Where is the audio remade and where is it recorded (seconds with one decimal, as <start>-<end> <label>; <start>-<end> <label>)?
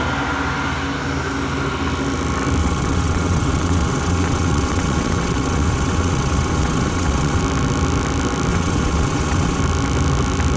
0.0-2.6 recorded; 2.6-7.4 remade; 7.4-8.5 recorded; 8.5-9.6 remade; 9.6-10.6 recorded